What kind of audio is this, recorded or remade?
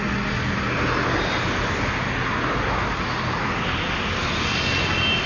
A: recorded